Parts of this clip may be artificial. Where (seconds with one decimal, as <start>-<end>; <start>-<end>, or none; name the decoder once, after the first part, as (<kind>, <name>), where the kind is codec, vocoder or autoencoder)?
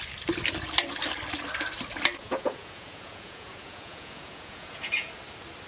2.2-5.1 (vocoder, Vocos)